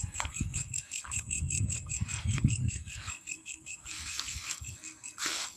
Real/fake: fake